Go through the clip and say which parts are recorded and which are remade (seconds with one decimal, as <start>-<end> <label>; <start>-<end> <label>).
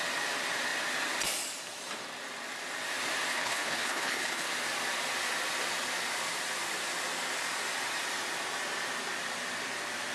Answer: 0.0-3.3 recorded; 3.3-4.5 remade; 4.5-10.1 recorded